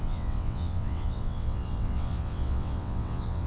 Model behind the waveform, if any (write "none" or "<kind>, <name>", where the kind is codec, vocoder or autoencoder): vocoder, WaveNeXt